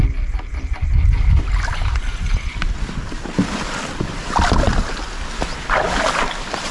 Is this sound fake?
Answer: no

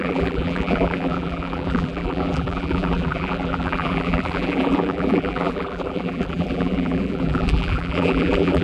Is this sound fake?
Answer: yes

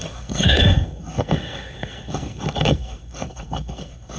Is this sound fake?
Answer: yes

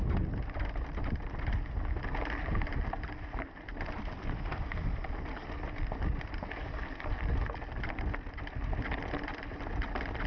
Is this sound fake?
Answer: no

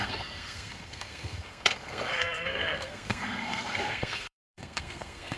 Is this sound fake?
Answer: yes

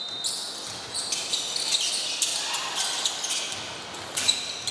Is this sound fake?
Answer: no